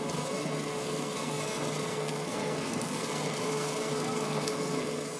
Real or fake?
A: fake